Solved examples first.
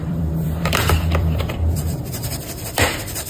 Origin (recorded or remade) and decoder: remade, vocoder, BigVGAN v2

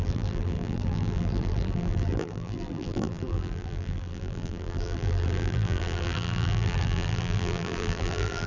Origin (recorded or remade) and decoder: remade, vocoder, BigVGAN v2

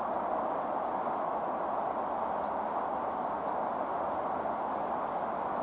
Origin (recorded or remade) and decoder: recorded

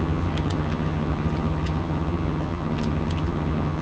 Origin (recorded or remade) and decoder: remade, vocoder, HiFi-GAN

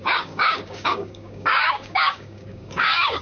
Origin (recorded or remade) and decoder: remade, codec, DAC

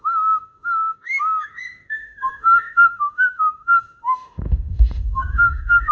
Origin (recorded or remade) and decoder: remade, autoencoder, DAC-VAE